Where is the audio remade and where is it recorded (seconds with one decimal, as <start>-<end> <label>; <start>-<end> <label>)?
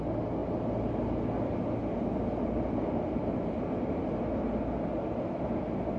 0.0-6.0 recorded